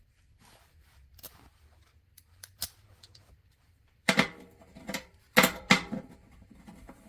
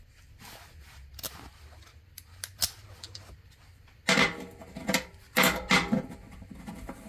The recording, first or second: second